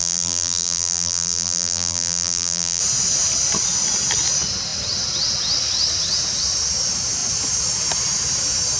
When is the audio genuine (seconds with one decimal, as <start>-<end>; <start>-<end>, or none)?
2.8-8.8